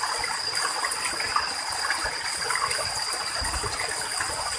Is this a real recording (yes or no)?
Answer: yes